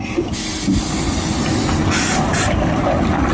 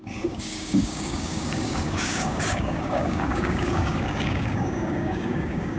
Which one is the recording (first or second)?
first